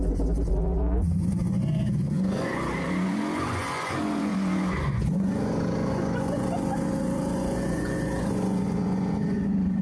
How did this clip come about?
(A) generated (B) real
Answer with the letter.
A